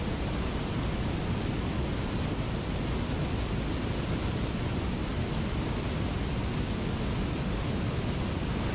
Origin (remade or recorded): recorded